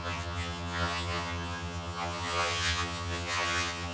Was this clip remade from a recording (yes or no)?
yes